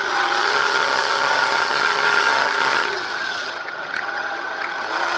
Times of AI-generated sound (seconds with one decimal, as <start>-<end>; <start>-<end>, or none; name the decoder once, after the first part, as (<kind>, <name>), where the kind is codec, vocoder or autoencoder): 0.0-5.2 (vocoder, HiFi-GAN)